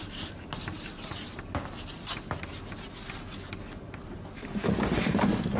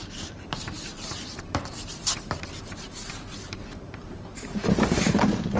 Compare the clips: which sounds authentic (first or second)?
first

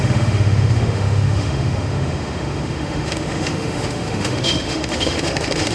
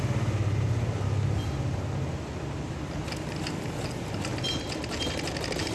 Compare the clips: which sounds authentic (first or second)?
second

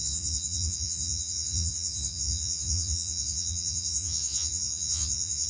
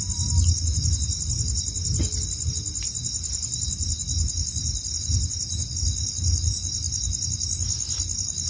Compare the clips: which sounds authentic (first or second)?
second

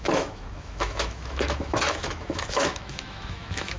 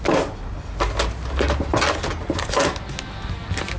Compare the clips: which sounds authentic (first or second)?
second